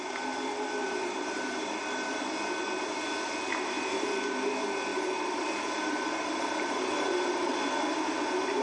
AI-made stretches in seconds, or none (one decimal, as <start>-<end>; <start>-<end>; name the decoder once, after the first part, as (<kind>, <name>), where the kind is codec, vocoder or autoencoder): 0.8-2.2 (vocoder, BigVGAN v2); 4.9-7.4